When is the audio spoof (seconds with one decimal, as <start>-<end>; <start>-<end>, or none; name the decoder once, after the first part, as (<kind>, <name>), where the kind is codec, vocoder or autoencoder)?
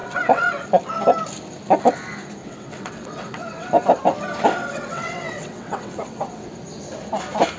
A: 0.0-0.5 (vocoder, WaveNeXt); 2.4-3.7; 4.6-6.5